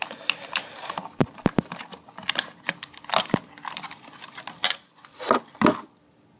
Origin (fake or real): fake